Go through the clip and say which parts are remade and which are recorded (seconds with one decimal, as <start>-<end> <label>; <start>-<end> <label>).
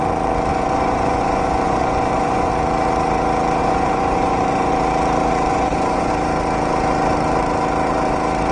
0.0-0.5 recorded; 0.5-2.5 remade; 2.5-3.6 recorded; 3.6-4.7 remade; 4.7-5.5 recorded; 5.5-6.1 remade; 6.1-8.5 recorded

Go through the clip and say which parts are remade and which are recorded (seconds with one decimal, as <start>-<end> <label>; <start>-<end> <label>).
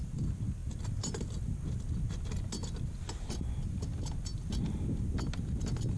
0.0-6.0 recorded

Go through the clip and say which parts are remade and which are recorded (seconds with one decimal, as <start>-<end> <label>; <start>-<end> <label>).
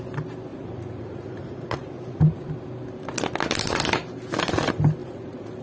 0.0-0.5 recorded; 0.5-2.5 remade; 2.5-5.0 recorded; 5.0-5.6 remade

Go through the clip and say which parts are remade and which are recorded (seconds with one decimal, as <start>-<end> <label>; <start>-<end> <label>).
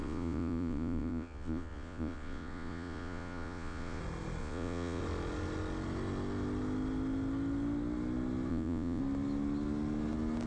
0.0-4.0 remade; 4.0-4.4 recorded; 4.4-5.0 remade; 5.0-8.5 recorded; 8.5-9.0 remade; 9.0-10.5 recorded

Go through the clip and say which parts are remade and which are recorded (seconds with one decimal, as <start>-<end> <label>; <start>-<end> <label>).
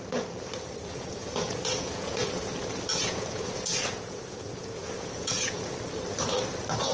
0.0-0.9 recorded; 0.9-2.5 remade; 2.5-2.9 recorded; 2.9-5.7 remade; 5.7-6.9 recorded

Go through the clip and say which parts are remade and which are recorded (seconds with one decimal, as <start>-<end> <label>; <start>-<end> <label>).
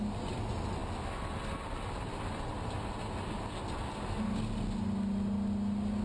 0.0-6.0 recorded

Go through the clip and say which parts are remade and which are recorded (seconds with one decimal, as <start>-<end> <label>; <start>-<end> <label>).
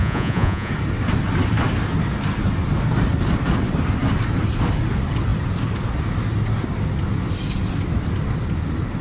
0.0-0.7 remade; 0.7-9.0 recorded